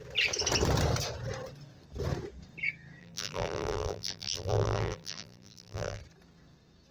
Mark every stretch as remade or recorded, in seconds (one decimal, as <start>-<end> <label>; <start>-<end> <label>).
0.0-3.0 recorded; 3.0-6.0 remade; 6.0-6.9 recorded